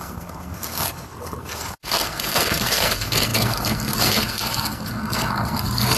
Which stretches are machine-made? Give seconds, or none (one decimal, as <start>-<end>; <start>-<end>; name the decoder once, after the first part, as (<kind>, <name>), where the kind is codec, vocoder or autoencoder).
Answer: 0.0-6.0 (codec, SNAC)